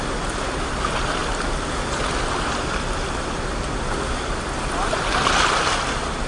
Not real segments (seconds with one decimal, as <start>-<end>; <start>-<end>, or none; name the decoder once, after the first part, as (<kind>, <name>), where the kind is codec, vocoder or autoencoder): none